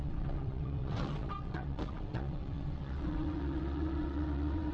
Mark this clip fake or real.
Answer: fake